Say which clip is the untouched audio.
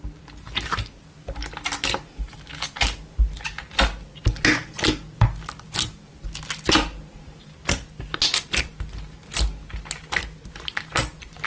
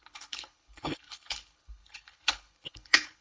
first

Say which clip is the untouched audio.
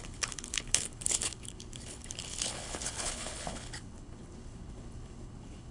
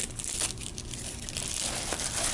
second